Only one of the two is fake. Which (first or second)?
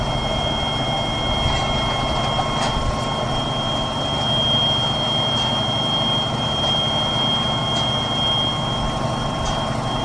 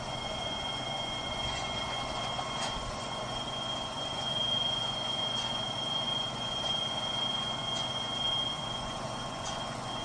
second